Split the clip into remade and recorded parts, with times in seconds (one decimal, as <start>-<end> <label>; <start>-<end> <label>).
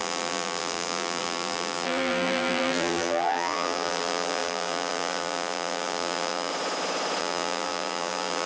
0.0-6.5 remade; 6.5-7.2 recorded; 7.2-8.5 remade